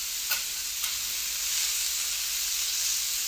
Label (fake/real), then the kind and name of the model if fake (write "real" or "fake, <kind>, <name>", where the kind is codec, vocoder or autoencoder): real